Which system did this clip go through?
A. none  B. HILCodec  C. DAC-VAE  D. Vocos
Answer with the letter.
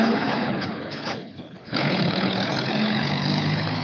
B